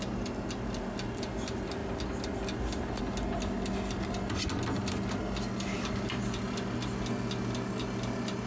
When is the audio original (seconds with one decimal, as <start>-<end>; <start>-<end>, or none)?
0.0-8.5